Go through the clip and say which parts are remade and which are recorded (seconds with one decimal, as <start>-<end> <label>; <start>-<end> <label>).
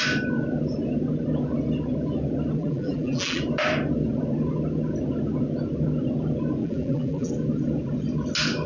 0.0-2.6 recorded; 2.6-3.4 remade; 3.4-6.6 recorded; 6.6-7.3 remade; 7.3-8.7 recorded